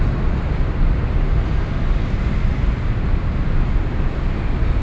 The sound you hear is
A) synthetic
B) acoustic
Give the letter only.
B